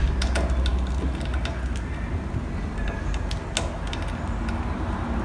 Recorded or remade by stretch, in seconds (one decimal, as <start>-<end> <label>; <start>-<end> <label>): 0.0-5.2 recorded